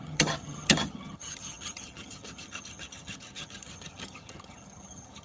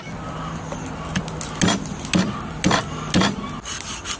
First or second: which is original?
second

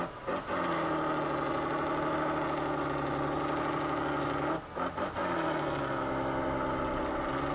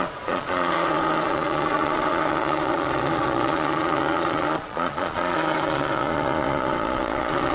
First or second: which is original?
first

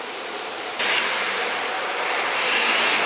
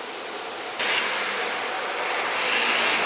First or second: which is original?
second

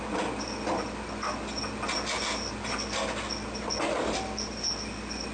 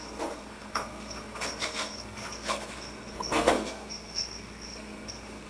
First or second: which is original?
first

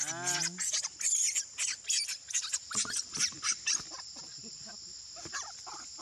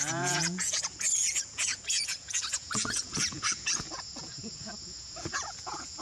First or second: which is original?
first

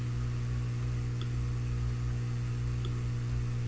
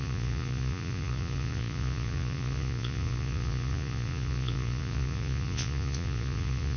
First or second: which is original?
first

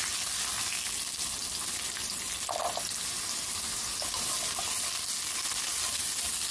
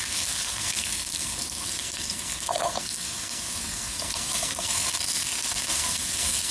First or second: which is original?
first